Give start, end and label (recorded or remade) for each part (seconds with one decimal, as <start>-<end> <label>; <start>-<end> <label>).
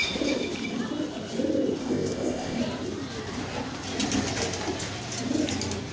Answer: 0.0-1.8 recorded; 1.8-2.6 remade; 2.6-5.9 recorded